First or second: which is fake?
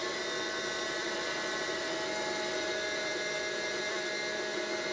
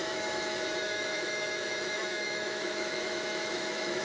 second